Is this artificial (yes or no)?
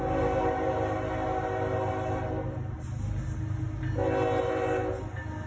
no